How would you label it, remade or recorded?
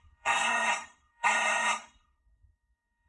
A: remade